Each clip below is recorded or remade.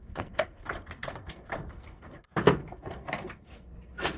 remade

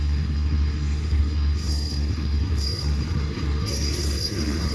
remade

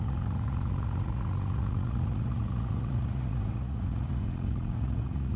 remade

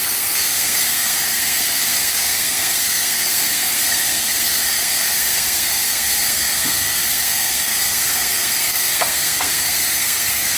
remade